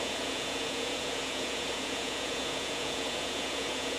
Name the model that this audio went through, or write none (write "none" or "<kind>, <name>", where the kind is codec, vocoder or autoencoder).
vocoder, Vocos